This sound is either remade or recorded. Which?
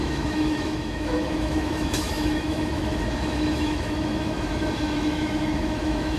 remade